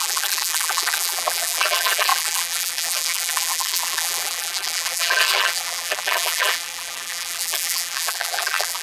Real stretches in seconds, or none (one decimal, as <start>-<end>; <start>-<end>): none